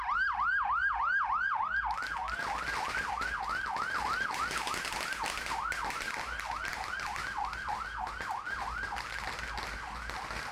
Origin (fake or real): real